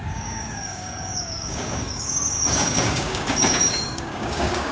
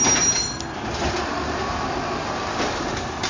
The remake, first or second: first